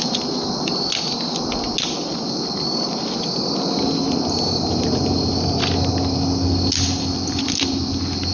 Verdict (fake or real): real